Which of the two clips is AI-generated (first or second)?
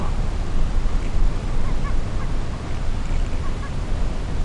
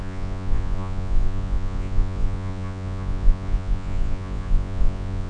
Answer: second